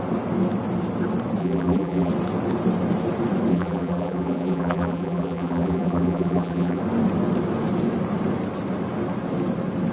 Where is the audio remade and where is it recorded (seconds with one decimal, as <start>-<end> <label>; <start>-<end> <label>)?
0.0-1.4 recorded; 1.4-2.1 remade; 2.1-3.5 recorded; 3.5-6.8 remade; 6.8-9.9 recorded